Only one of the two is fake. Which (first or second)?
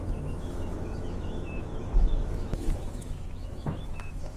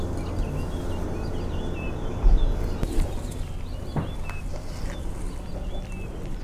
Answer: first